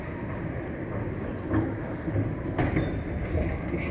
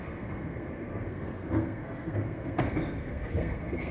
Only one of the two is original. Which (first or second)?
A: first